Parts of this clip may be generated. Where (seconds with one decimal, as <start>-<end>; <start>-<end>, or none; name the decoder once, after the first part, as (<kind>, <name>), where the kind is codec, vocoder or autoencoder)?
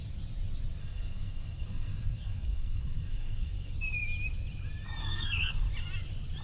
0.8-3.7 (codec, SNAC); 5.0-5.5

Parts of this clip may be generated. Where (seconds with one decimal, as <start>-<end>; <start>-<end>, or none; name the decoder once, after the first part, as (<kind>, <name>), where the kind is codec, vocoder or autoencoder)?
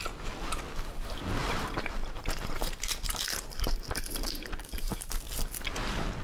1.4-5.1 (vocoder, BigVGAN v2)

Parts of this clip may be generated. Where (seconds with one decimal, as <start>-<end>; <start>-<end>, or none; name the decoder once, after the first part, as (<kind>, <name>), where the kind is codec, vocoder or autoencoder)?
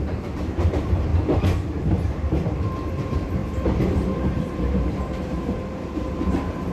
0.0-1.1 (vocoder, BigVGAN v2); 1.8-6.7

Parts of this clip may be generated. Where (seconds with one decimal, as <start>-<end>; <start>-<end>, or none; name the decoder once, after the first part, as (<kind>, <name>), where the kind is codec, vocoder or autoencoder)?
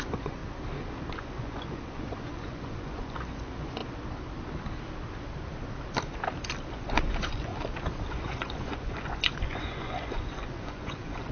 0.0-0.4 (vocoder, Vocos); 1.2-3.8; 6.7-7.5; 8.1-11.3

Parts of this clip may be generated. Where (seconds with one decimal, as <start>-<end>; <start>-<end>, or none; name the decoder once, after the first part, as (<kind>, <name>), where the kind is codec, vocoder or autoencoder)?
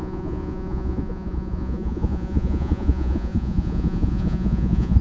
0.0-5.0 (vocoder, Vocos)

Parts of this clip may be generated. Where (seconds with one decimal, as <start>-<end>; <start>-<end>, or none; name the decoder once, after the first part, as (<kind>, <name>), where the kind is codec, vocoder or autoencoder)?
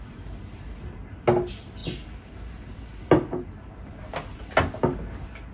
none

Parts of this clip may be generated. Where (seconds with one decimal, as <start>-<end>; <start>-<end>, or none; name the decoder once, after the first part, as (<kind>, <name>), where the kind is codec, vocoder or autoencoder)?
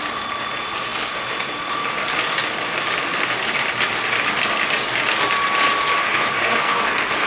6.0-7.3 (codec, SNAC)